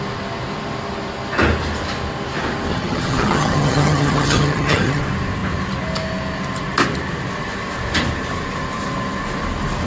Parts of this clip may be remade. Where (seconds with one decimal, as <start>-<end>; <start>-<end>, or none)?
2.7-5.0